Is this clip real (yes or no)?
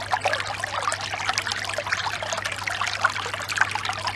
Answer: yes